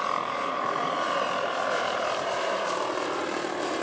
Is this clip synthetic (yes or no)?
yes